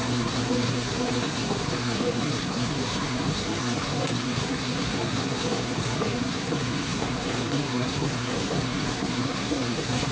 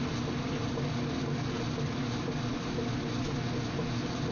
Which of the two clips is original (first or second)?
second